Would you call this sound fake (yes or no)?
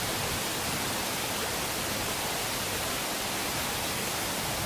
no